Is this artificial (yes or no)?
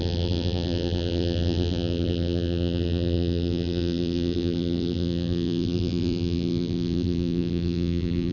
yes